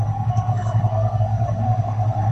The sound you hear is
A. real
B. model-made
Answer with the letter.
B